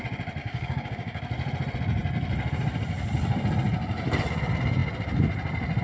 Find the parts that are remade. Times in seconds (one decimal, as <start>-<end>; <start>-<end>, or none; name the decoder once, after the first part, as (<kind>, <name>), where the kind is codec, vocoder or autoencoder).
0.4-1.2 (codec, DAC)